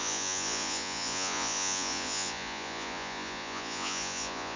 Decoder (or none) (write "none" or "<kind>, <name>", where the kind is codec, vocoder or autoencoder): vocoder, Vocos